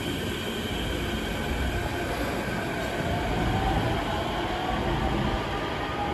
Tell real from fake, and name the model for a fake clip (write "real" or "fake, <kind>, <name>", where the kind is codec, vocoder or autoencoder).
real